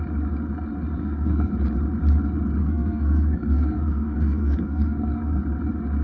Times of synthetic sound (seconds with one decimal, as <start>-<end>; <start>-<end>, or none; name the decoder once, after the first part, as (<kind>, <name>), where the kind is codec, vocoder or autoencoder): 1.0-1.5 (codec, SNAC); 2.6-5.4